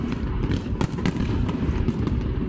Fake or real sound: fake